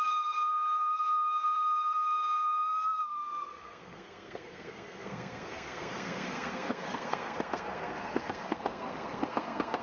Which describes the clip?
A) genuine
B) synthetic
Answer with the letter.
B